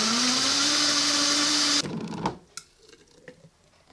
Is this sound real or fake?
real